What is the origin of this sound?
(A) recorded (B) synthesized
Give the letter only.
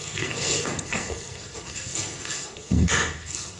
B